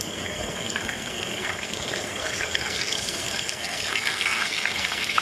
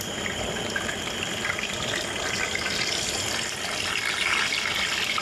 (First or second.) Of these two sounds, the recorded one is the second